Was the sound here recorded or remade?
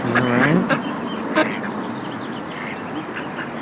recorded